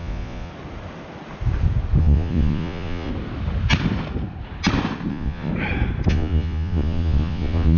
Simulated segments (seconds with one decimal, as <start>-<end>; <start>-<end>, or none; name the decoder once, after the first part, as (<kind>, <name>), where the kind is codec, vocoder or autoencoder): 0.0-0.5 (vocoder, Vocos); 2.0-3.1; 5.1-5.5; 6.1-7.8